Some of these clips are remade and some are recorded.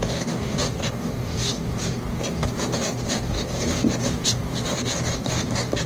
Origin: remade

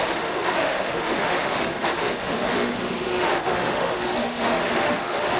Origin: remade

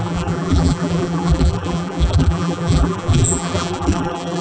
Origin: remade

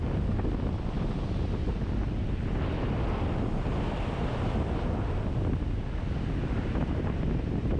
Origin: recorded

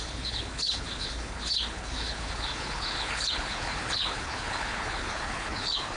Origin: remade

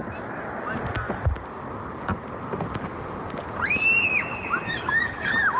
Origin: recorded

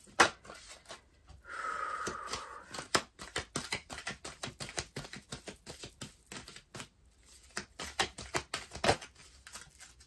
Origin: recorded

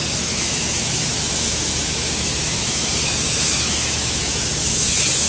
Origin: remade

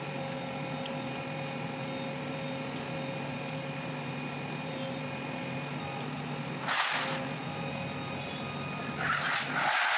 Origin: recorded